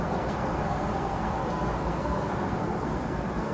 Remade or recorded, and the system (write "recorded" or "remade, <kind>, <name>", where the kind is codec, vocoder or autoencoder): remade, codec, SNAC